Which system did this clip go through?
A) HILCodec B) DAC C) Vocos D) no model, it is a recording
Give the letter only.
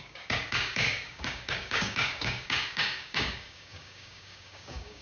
B